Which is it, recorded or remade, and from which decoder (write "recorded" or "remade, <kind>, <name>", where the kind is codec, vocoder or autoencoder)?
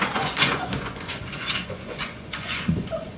remade, vocoder, Vocos